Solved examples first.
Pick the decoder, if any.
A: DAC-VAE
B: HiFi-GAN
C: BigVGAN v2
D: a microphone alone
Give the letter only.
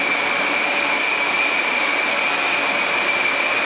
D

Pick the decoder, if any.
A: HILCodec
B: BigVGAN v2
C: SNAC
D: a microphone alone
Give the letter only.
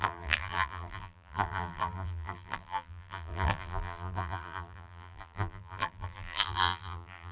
B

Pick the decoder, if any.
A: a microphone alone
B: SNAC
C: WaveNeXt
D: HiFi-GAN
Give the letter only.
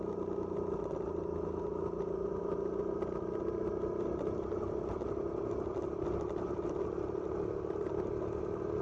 A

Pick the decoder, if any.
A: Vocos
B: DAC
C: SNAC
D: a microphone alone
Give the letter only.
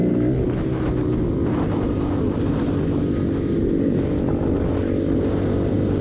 D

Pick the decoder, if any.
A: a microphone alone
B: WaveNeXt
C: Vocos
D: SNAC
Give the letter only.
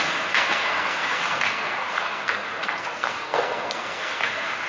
D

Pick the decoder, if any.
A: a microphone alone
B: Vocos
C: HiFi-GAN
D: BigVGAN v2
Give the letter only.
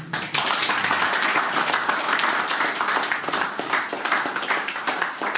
A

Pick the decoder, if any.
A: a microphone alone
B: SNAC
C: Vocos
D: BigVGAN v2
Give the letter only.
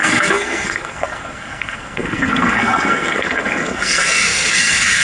B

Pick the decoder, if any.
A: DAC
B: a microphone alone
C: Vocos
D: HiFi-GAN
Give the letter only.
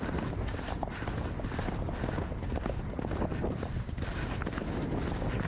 B